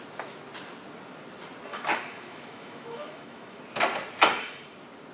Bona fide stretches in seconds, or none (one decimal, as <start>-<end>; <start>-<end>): 0.0-1.7; 3.6-5.1